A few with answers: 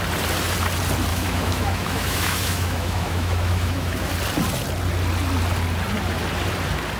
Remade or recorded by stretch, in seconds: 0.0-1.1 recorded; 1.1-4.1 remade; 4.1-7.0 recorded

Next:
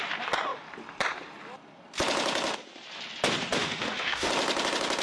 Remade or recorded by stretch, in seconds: 0.0-3.6 recorded; 3.6-4.3 remade; 4.3-5.0 recorded

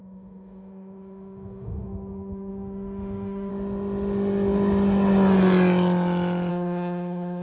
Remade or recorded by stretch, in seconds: 0.0-3.5 remade; 3.5-6.5 recorded; 6.5-7.4 remade